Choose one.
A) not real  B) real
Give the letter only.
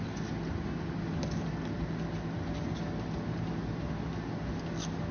B